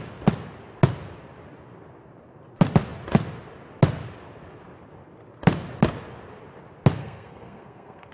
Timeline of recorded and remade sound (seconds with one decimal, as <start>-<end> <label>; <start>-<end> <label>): 0.0-7.0 recorded; 7.0-8.1 remade